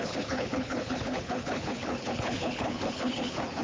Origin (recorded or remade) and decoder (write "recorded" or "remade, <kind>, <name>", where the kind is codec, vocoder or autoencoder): remade, codec, HILCodec